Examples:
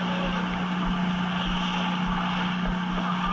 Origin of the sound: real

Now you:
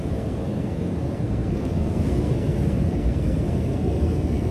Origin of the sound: fake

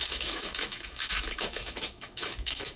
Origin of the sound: fake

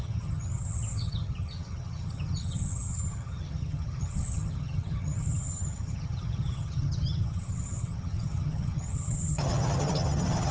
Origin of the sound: fake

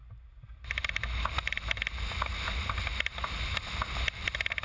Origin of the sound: real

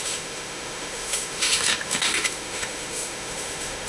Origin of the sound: fake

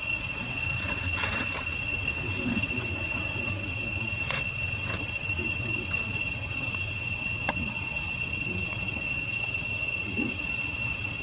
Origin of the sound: fake